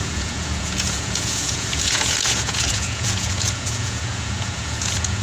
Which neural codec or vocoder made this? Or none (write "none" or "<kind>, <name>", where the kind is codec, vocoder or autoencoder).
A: vocoder, Vocos